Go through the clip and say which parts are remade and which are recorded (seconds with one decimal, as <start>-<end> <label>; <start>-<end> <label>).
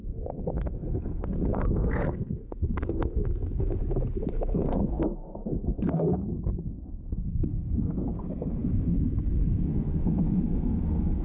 0.0-3.8 remade; 3.8-4.3 recorded; 4.3-11.2 remade